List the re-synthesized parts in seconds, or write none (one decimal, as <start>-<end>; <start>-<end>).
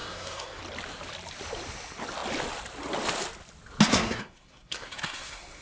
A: 0.0-0.6; 3.9-5.6